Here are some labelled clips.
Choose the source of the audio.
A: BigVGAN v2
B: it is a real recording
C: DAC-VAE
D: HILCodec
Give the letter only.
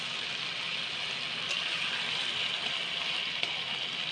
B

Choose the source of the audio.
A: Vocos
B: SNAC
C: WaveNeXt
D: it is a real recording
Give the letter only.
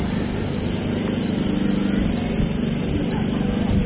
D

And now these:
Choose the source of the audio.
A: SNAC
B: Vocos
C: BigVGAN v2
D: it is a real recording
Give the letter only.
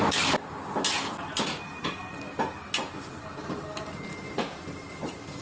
D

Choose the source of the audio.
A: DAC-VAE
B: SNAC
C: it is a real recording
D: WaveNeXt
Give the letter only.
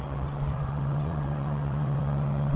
D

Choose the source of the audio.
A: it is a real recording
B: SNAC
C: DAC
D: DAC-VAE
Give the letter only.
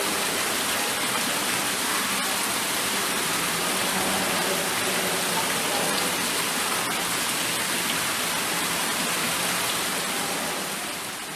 A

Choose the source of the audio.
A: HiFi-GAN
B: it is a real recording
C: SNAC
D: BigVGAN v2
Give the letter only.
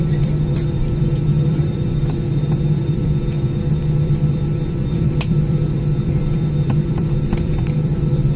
D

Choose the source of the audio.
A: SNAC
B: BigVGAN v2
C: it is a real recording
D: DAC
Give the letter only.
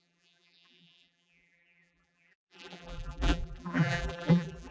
B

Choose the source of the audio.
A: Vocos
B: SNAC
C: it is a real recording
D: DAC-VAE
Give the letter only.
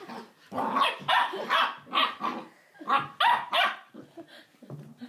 C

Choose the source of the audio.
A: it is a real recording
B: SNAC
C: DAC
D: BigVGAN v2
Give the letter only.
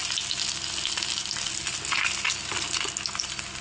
A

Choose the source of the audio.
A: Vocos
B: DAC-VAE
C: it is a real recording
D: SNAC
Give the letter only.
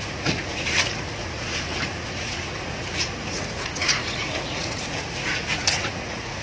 A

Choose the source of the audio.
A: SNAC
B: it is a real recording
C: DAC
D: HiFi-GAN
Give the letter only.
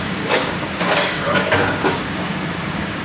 C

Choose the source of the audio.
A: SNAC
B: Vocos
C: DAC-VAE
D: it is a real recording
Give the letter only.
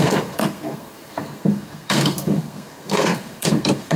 A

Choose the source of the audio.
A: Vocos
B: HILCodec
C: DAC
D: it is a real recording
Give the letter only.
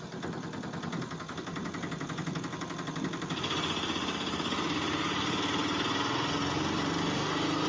D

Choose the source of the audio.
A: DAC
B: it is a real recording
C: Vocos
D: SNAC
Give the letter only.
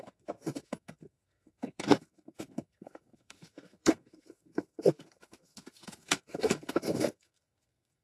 D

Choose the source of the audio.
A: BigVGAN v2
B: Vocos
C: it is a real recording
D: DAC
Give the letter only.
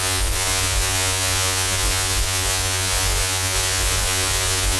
B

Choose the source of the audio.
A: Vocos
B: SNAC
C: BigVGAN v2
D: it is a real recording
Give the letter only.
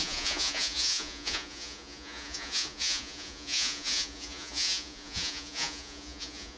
A